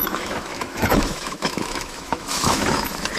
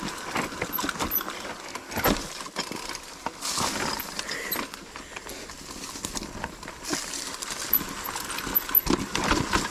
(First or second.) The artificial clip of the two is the first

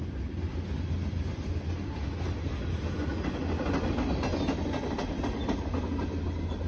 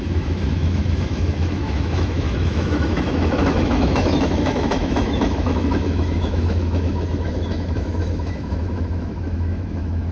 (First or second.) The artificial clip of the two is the second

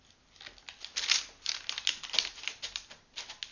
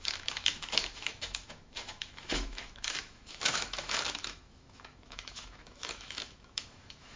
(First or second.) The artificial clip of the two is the second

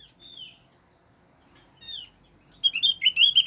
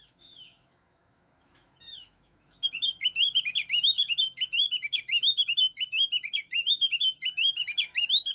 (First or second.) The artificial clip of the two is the second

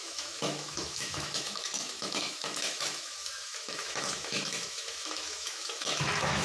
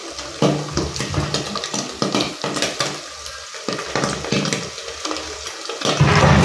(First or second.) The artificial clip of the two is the first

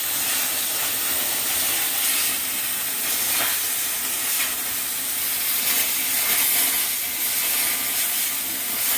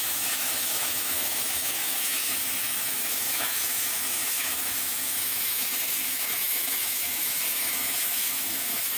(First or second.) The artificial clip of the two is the second